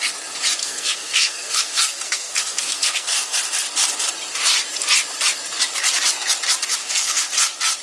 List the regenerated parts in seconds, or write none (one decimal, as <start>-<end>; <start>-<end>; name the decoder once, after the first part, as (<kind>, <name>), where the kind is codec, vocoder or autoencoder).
0.6-3.4 (codec, SNAC); 6.8-7.3